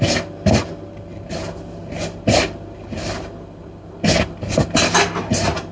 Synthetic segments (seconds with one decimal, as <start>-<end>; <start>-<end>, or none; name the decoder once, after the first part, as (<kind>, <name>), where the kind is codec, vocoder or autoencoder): none